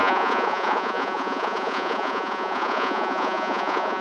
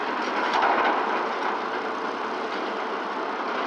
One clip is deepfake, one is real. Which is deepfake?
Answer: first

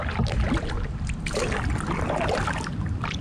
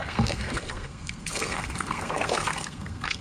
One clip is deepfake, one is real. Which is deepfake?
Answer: second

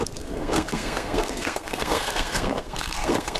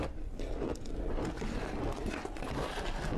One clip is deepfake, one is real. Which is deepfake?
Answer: first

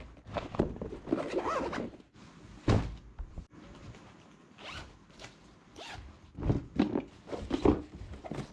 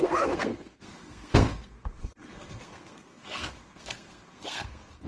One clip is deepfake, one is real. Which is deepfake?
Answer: second